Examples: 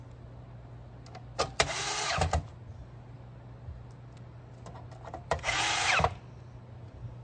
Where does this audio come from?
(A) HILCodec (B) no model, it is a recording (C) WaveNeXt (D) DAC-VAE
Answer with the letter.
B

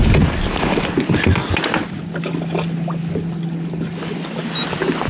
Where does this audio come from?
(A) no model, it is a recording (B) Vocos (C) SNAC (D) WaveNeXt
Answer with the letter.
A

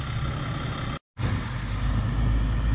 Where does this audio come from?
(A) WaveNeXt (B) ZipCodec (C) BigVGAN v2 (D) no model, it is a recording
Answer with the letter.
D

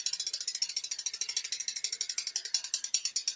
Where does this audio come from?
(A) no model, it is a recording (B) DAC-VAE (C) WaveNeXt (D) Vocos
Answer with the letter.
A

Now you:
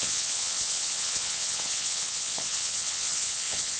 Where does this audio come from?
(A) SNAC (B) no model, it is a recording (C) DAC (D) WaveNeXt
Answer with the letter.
D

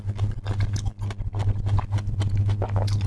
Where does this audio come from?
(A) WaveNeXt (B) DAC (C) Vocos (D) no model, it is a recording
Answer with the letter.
D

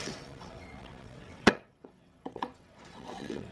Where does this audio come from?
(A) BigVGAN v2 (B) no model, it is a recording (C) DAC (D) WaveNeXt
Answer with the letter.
D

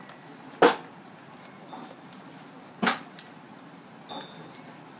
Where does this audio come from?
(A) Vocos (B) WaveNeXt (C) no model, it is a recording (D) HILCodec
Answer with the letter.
C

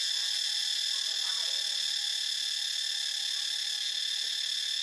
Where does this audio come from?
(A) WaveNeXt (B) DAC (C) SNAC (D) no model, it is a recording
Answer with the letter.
D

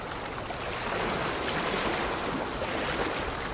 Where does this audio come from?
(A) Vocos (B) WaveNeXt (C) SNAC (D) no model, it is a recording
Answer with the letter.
D